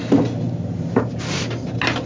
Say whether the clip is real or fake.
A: real